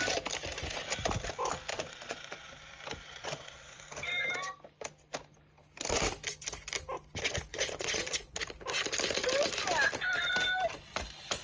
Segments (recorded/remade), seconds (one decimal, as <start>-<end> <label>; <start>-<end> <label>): 0.0-1.7 recorded; 1.7-2.5 remade; 2.5-3.0 recorded; 3.0-3.8 remade; 3.8-7.5 recorded; 7.5-8.4 remade; 8.4-11.4 recorded